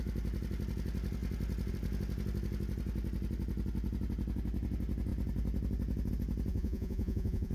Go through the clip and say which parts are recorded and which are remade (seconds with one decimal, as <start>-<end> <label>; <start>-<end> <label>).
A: 0.0-6.5 recorded; 6.5-7.5 remade